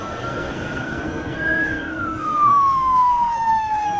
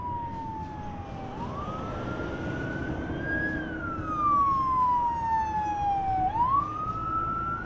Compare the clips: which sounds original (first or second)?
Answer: second